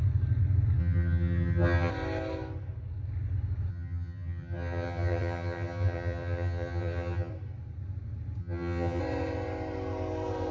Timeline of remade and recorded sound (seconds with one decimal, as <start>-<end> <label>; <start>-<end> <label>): 0.0-0.8 recorded; 0.8-1.9 remade; 1.9-3.7 recorded; 3.7-7.3 remade; 7.3-8.4 recorded; 8.4-9.0 remade; 9.0-10.5 recorded